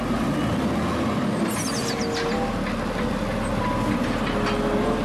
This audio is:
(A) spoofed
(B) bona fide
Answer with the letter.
B